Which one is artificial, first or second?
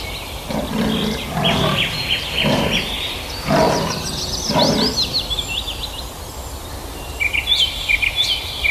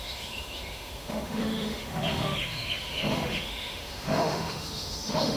second